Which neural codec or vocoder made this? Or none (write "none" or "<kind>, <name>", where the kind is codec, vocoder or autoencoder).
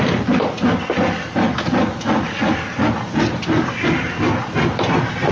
none